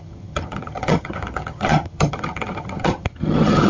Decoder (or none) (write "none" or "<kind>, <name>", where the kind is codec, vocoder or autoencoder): vocoder, HiFi-GAN